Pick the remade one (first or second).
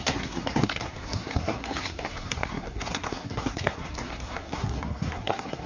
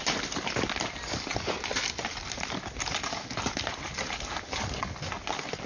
first